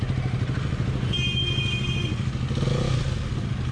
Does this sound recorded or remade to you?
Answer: recorded